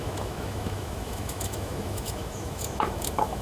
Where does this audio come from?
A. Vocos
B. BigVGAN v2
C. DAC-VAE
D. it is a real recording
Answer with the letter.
C